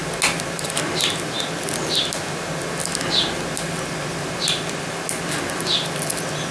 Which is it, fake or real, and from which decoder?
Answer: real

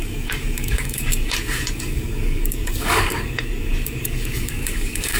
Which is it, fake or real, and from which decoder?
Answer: fake, codec, DAC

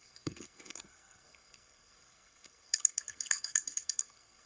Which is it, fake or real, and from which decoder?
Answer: fake, codec, SNAC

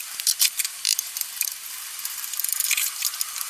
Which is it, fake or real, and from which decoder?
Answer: real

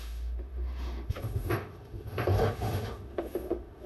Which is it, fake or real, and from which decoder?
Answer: fake, autoencoder, DAC-VAE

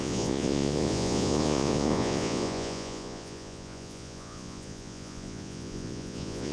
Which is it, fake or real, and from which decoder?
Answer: fake, vocoder, Vocos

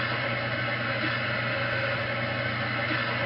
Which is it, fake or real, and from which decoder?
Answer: real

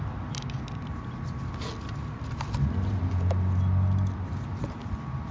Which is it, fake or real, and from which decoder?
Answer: real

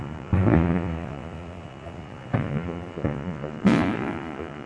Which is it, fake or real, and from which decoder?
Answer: fake, vocoder, Vocos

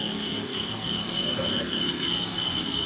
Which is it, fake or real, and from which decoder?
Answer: fake, codec, SNAC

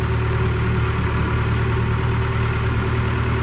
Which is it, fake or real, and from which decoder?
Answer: real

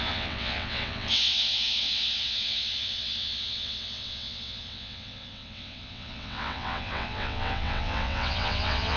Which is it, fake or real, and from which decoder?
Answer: fake, vocoder, WaveNeXt